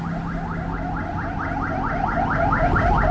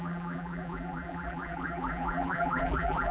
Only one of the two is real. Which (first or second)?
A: first